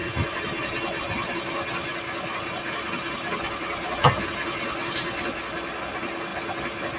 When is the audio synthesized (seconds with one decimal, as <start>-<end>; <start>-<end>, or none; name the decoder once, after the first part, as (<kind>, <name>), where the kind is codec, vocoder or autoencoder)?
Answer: 1.9-4.3 (vocoder, BigVGAN v2)